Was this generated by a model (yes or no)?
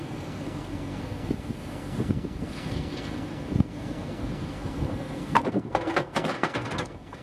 yes